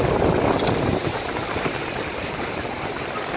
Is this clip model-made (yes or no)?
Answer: no